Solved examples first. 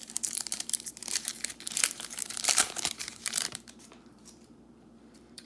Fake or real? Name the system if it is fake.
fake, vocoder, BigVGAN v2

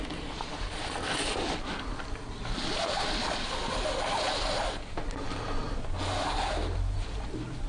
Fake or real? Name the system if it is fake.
real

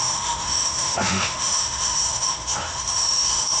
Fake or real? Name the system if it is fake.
fake, autoencoder, DAC-VAE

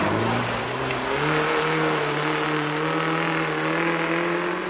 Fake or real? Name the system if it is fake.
real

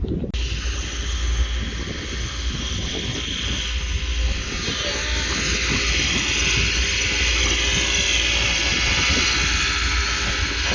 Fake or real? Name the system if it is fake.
real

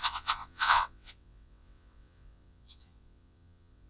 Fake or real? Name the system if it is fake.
fake, vocoder, WaveNeXt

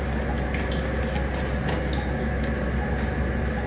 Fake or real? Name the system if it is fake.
real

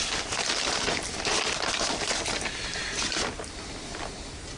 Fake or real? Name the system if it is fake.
real